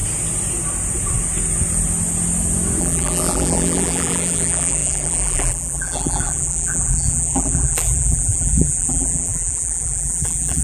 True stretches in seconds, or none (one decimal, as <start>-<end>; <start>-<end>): 0.0-2.8